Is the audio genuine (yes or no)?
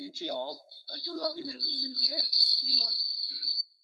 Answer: no